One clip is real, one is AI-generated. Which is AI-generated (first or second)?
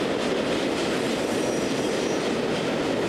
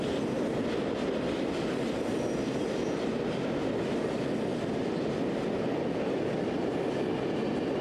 first